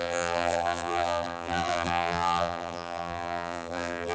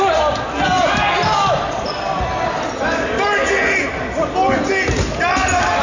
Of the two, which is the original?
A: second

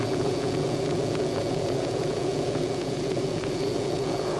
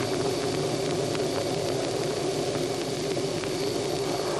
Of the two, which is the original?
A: second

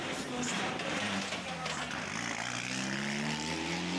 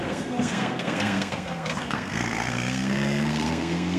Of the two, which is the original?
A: first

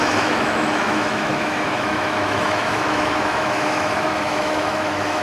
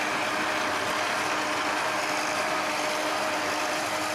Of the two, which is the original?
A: second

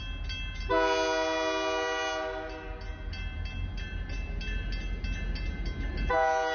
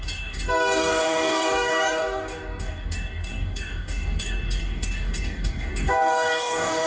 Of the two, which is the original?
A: first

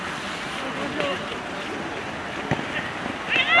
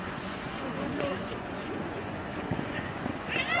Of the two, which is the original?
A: first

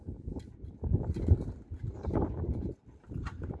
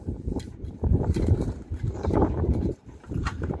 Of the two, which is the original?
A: first